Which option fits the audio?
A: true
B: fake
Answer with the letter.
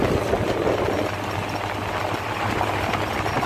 A